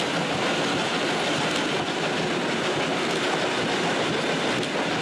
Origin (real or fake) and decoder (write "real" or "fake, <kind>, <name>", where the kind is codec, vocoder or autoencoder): real